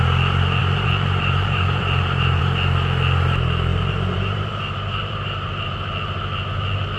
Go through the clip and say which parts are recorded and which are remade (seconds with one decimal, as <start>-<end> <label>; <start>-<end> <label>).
0.0-0.6 recorded; 0.6-2.4 remade; 2.4-3.7 recorded; 3.7-5.7 remade; 5.7-7.0 recorded